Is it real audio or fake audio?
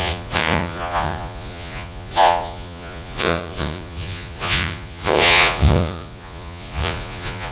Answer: fake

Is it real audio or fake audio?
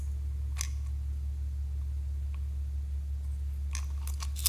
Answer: real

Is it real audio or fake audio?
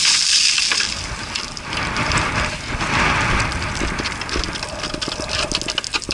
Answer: real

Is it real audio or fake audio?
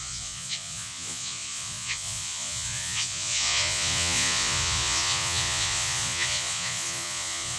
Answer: fake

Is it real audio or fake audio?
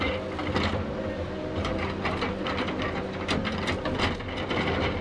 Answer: real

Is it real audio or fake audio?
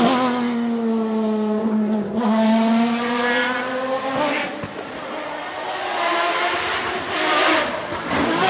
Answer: real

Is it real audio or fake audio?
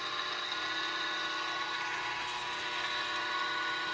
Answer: real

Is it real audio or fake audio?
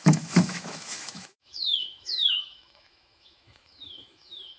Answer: fake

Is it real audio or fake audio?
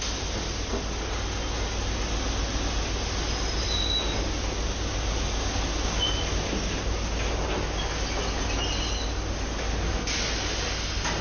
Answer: real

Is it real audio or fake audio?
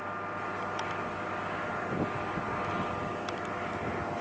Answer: real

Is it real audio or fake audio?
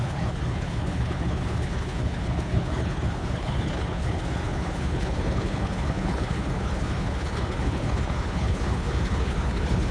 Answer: fake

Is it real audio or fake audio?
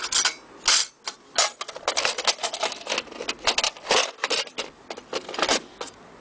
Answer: real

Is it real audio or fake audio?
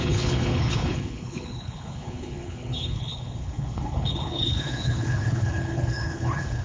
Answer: fake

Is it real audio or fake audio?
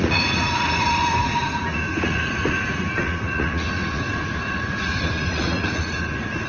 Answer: fake